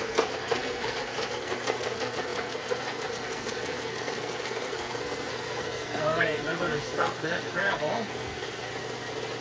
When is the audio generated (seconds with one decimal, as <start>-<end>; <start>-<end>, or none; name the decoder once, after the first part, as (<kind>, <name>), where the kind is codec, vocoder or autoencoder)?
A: 0.0-8.7 (codec, SNAC)